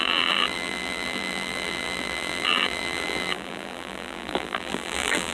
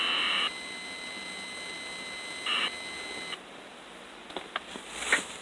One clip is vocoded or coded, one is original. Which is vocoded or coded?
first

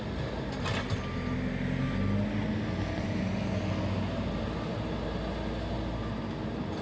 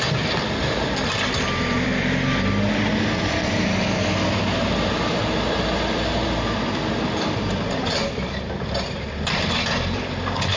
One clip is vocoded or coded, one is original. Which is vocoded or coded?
second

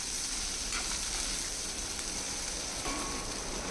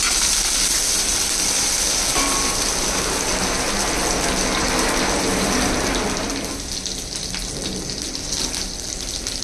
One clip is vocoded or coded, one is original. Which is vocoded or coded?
first